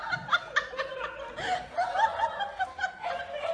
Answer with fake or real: real